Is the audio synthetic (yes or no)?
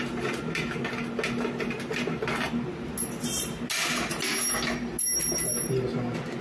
no